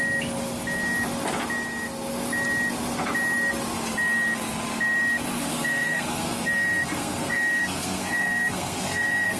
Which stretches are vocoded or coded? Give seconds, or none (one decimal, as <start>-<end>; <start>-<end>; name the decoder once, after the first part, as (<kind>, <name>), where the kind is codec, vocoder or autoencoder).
5.5-9.4 (codec, SNAC)